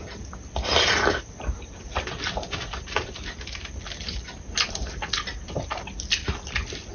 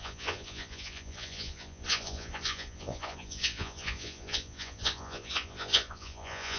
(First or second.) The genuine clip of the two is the first